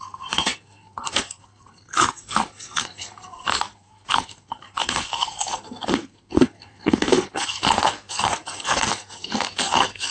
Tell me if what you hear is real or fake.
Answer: fake